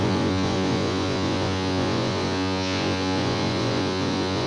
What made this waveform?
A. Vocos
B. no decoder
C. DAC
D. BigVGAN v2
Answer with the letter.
A